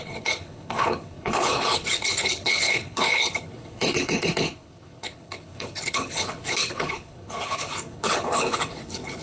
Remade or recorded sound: remade